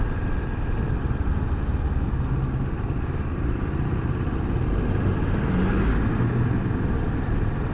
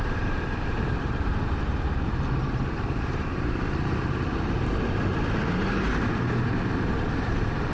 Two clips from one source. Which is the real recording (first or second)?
first